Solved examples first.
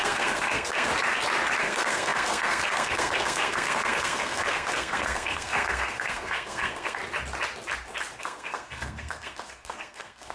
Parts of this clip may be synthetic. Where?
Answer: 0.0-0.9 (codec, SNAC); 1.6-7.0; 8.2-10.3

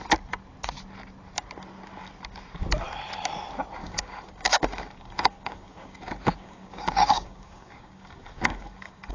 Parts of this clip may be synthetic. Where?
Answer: 3.8-9.1 (codec, DAC)

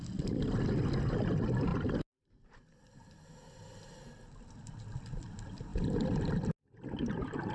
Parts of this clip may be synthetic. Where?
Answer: 5.7-6.2 (vocoder, BigVGAN v2)

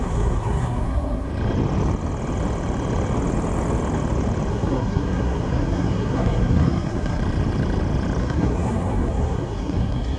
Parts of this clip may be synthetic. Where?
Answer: 0.0-1.3 (codec, SNAC); 4.5-7.2; 8.2-10.2

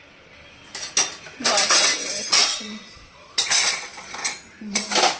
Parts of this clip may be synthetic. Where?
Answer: 2.3-4.8 (vocoder, Vocos)